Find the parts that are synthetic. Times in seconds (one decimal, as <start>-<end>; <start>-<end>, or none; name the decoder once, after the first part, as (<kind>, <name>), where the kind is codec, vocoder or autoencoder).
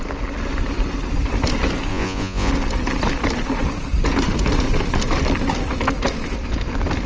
1.9-2.5 (vocoder, Vocos)